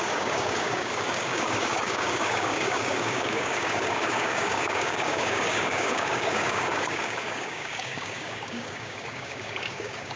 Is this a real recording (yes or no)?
no